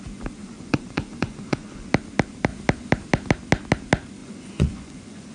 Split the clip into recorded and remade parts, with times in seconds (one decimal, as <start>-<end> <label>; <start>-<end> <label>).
0.0-0.4 recorded; 0.4-1.9 remade; 1.9-4.2 recorded; 4.2-5.3 remade

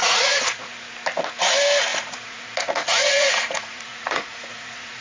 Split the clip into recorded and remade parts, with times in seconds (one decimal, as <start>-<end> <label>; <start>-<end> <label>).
0.0-0.7 remade; 0.7-1.9 recorded; 1.9-5.0 remade

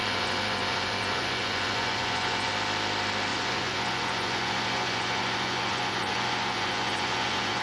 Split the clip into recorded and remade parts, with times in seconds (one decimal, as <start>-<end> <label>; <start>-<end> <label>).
0.0-2.5 remade; 2.5-3.3 recorded; 3.3-7.6 remade

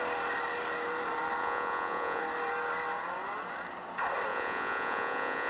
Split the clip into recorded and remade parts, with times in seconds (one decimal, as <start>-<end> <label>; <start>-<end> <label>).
0.0-1.4 recorded; 1.4-2.2 remade; 2.2-4.3 recorded; 4.3-5.5 remade

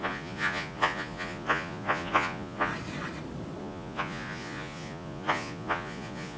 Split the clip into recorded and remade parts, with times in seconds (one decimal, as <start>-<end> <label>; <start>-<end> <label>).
0.0-2.7 remade; 2.7-3.6 recorded; 3.6-6.4 remade

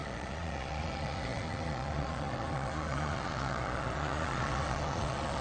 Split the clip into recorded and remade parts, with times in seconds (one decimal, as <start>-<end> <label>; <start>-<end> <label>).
0.0-5.4 remade